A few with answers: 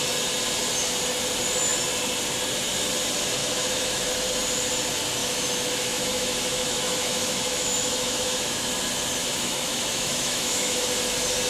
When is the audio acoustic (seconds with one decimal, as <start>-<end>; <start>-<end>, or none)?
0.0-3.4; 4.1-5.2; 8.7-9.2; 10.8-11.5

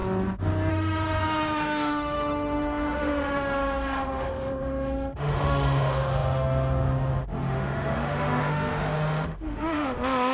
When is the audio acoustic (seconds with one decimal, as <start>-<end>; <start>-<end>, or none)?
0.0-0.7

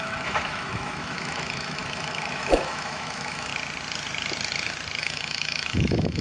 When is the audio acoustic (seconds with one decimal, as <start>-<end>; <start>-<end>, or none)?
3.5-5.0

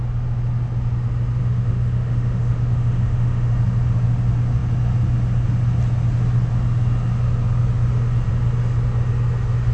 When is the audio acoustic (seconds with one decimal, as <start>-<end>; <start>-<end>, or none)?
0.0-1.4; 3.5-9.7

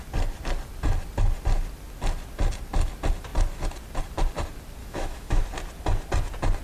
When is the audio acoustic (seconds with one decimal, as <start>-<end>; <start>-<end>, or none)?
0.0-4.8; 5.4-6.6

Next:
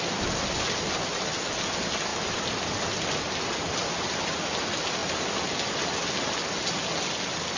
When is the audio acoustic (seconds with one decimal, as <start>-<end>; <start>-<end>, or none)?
0.0-7.6

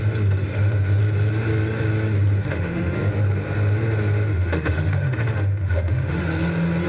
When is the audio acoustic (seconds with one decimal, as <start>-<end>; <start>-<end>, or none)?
0.0-0.5; 1.0-2.4; 3.1-4.3; 6.2-6.9